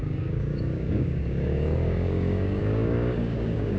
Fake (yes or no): yes